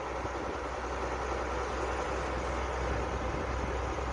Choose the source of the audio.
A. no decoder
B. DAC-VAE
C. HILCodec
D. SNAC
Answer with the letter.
A